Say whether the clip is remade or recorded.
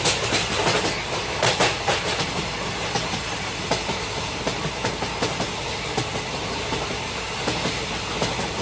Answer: recorded